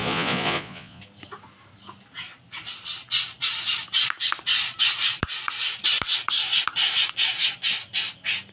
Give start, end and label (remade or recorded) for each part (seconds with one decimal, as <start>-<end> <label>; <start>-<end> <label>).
0.0-1.0 remade; 1.0-8.5 recorded